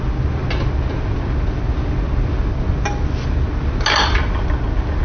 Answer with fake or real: real